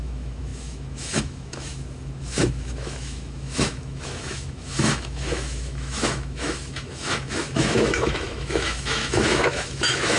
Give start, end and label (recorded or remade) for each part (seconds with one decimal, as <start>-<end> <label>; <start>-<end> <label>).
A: 0.0-10.2 remade